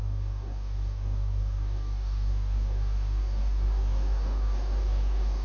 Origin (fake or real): fake